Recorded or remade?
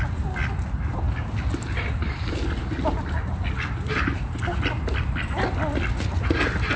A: recorded